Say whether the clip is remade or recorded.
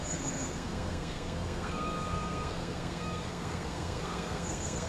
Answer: remade